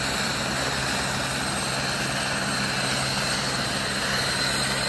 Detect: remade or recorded recorded